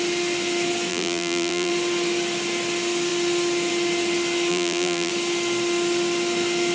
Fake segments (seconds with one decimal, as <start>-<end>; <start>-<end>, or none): 0.9-1.7; 4.5-5.1